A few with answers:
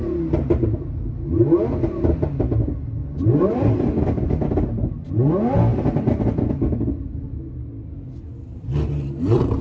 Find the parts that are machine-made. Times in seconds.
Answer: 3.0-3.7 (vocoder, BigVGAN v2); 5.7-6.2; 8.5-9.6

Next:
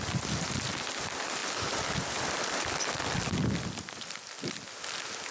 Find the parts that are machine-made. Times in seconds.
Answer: none

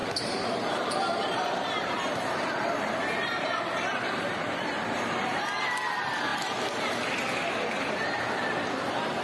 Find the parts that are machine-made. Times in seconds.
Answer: 0.0-2.9 (vocoder, BigVGAN v2); 3.9-5.4

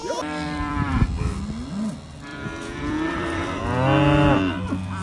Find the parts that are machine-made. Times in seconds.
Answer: 0.0-1.1 (vocoder, BigVGAN v2); 2.3-3.6

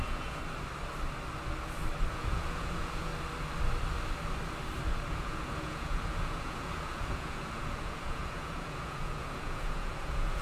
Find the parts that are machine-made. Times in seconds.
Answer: 0.0-0.4 (vocoder, Vocos); 2.1-3.1; 5.1-10.4